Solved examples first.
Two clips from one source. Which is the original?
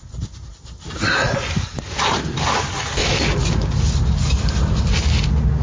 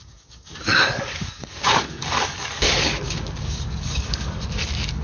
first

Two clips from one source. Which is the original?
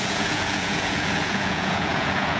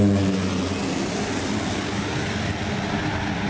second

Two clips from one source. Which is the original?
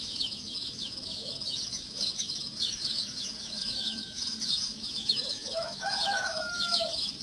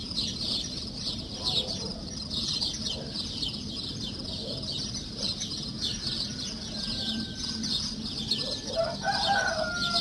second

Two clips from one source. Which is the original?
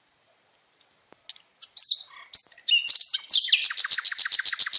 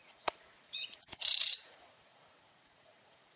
first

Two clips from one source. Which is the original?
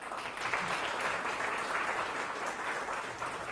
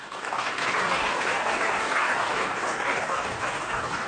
first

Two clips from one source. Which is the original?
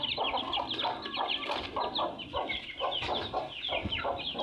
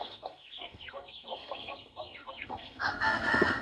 first